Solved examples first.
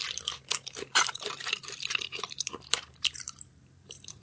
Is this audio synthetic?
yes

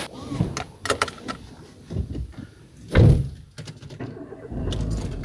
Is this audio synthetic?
no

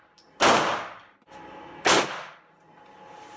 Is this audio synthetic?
no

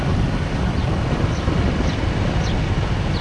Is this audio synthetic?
no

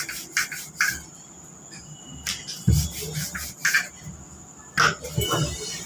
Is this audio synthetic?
no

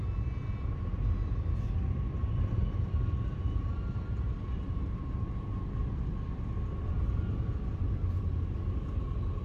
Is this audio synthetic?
no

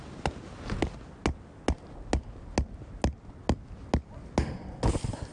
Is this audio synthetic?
no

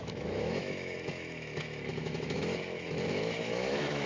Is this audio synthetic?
yes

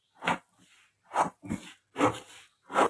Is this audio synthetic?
no